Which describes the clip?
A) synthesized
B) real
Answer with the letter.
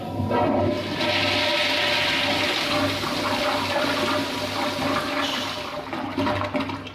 B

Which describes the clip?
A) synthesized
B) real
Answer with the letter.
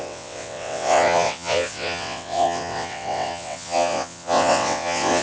A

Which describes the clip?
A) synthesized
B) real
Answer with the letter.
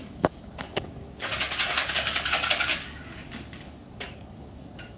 A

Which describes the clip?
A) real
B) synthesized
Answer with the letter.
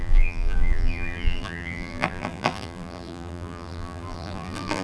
B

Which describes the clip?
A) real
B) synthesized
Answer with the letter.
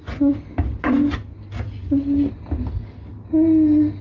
A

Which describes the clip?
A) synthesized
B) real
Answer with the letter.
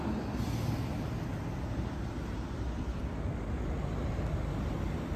B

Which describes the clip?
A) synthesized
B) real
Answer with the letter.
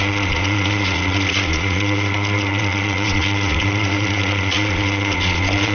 A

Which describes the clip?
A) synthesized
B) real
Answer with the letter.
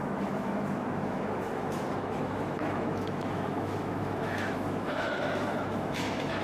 A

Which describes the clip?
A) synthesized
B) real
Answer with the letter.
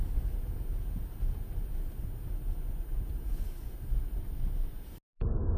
B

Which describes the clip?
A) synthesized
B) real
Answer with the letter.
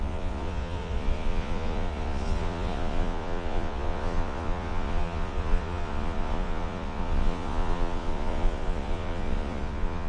A